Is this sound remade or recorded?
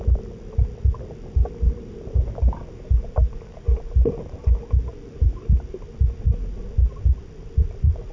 recorded